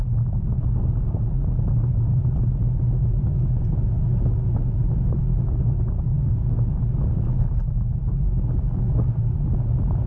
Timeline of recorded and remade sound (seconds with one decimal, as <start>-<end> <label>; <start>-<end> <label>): 0.0-10.1 recorded

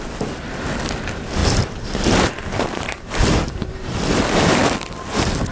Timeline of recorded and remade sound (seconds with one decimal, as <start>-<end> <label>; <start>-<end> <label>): 0.0-1.4 recorded; 1.4-4.7 remade; 4.7-5.5 recorded

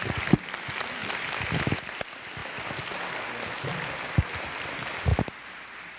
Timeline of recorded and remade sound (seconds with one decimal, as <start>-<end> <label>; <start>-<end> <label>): 0.0-1.0 recorded; 1.0-2.0 remade; 2.0-5.1 recorded; 5.1-6.0 remade

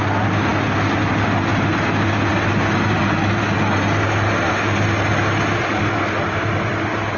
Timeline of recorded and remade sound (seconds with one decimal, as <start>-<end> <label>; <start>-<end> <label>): 0.0-7.2 recorded